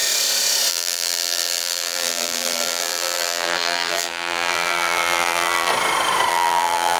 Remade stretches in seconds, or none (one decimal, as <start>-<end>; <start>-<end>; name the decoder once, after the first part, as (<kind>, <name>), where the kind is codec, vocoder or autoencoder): 0.7-5.7 (vocoder, BigVGAN v2); 6.3-7.0